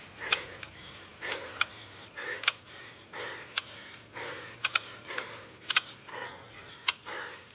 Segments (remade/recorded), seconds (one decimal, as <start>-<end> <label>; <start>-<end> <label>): 0.0-6.1 recorded; 6.1-6.7 remade; 6.7-7.5 recorded